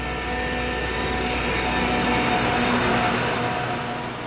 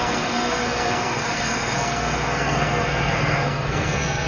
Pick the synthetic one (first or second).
second